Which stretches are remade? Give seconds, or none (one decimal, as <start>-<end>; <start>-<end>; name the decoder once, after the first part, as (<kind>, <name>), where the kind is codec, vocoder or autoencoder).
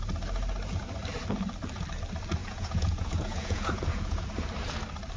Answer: 2.4-4.2 (vocoder, Vocos)